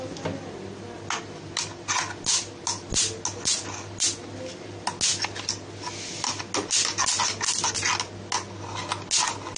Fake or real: real